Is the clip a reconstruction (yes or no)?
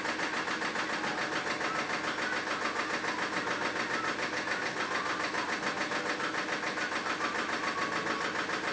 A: no